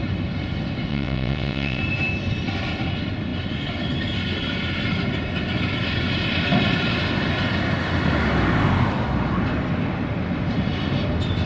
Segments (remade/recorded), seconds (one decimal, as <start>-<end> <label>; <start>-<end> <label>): 0.0-0.9 recorded; 0.9-1.8 remade; 1.8-11.5 recorded